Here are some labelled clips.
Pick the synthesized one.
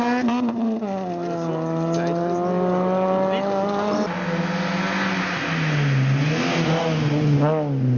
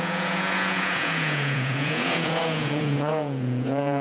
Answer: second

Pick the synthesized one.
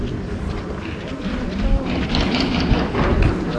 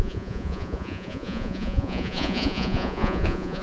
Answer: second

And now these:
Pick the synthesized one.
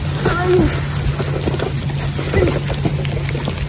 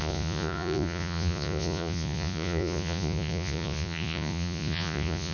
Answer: second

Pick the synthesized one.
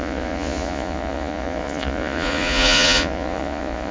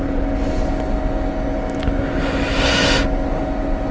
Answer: first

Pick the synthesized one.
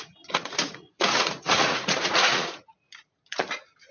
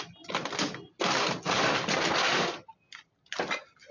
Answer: first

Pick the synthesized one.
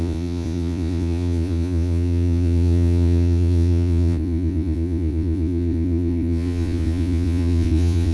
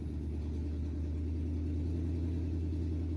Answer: first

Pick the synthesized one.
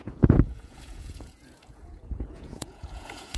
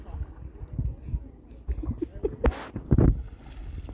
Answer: first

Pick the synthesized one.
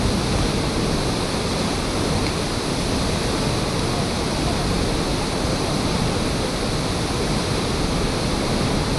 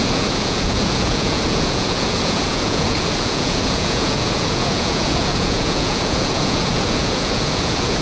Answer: second